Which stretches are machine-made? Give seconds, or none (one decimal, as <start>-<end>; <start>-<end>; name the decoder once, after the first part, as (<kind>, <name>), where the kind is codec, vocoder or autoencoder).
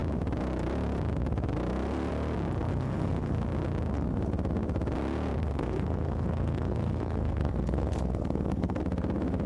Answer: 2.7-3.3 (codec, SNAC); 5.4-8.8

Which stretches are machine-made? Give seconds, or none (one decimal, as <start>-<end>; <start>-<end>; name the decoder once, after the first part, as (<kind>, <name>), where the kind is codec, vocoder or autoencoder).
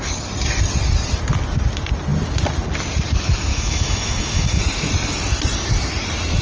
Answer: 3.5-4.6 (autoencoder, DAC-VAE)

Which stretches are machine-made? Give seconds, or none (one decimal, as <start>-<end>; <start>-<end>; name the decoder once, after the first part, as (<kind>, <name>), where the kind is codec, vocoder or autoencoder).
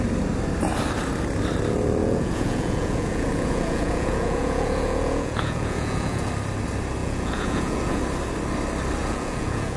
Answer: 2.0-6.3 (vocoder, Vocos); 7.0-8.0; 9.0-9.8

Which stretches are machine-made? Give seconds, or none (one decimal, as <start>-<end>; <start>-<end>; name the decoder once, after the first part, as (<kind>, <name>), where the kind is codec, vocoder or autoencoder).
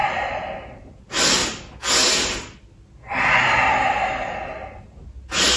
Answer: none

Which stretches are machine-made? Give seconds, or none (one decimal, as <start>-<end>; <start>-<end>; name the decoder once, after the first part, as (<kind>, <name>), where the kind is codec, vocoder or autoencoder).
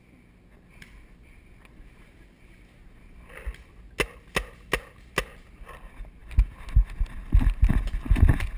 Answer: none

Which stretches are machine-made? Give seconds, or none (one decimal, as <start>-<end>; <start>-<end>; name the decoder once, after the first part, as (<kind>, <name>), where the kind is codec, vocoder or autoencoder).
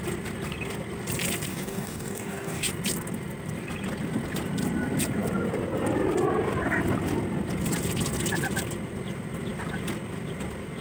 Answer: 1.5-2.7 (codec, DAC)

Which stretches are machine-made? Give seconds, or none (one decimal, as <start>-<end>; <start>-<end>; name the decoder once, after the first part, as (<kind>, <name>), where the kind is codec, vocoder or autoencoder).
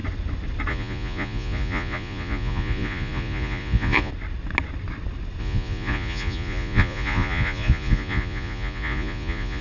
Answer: 0.7-4.1 (vocoder, Vocos); 5.4-9.6